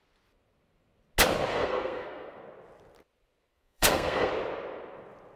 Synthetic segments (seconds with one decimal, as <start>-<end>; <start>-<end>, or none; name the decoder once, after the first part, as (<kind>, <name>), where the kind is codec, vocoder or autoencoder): 1.5-2.4 (codec, SNAC); 3.5-4.3